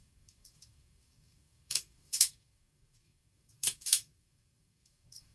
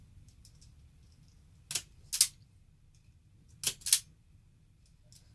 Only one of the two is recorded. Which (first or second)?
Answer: second